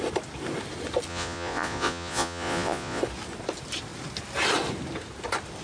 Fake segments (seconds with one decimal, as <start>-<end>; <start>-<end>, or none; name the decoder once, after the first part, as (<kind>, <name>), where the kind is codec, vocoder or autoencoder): 1.1-3.0 (vocoder, Vocos)